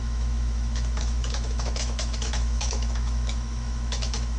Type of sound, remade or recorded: remade